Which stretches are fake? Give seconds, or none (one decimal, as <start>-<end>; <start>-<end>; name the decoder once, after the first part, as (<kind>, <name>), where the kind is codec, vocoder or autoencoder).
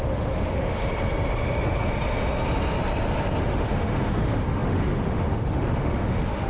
0.0-0.9 (autoencoder, DAC-VAE); 3.4-6.5